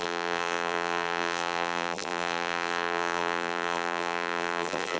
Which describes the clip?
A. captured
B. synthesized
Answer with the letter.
B